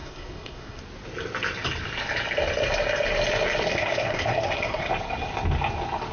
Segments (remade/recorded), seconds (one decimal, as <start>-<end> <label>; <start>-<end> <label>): 0.0-0.8 remade; 0.8-3.7 recorded; 3.7-4.9 remade; 4.9-6.1 recorded